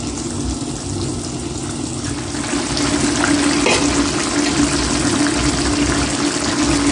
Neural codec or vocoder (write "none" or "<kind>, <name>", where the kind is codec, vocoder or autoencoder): none